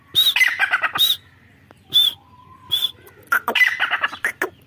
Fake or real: real